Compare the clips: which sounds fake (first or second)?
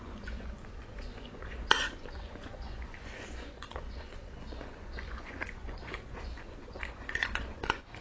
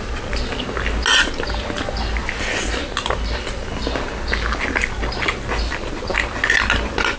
first